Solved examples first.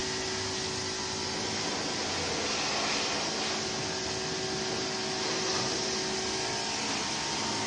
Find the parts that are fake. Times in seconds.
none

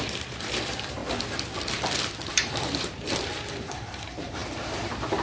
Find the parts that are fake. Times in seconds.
0.0-1.0 (vocoder, BigVGAN v2); 2.3-5.2

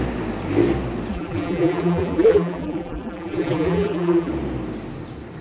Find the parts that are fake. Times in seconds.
1.1-4.3 (vocoder, BigVGAN v2)

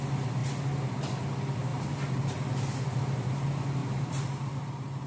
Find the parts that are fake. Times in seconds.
1.7-3.3 (vocoder, BigVGAN v2); 3.8-5.1

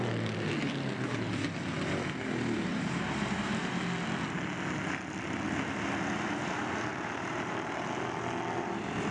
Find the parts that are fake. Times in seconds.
2.7-3.8 (vocoder, BigVGAN v2); 6.9-7.9

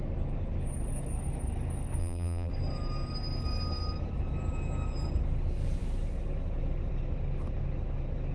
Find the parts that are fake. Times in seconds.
2.0-2.5 (vocoder, BigVGAN v2)